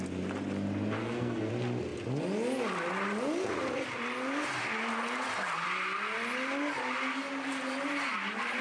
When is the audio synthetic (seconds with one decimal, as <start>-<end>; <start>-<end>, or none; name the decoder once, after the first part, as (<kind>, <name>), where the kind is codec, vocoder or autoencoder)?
1.0-1.5 (codec, SNAC)